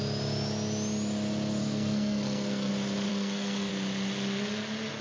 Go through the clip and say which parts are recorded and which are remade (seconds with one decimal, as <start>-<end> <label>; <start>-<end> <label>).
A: 0.0-1.6 recorded; 1.6-2.7 remade; 2.7-3.1 recorded; 3.1-3.7 remade; 3.7-5.0 recorded